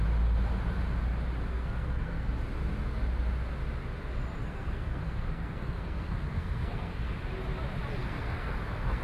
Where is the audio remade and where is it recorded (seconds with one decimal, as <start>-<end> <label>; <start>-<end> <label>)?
0.0-1.5 recorded; 1.5-2.3 remade; 2.3-4.4 recorded; 4.4-7.1 remade; 7.1-8.0 recorded; 8.0-9.0 remade